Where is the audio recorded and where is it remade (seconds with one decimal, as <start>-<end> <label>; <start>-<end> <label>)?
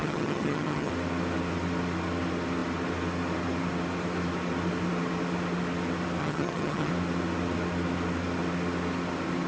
0.0-0.9 remade; 0.9-6.2 recorded; 6.2-6.9 remade; 6.9-9.5 recorded